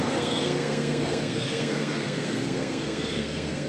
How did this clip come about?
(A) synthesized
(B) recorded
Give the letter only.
A